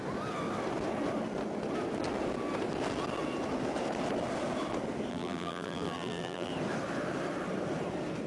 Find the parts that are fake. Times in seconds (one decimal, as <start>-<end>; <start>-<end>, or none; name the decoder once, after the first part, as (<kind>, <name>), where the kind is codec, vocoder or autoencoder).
5.1-6.5 (vocoder, BigVGAN v2)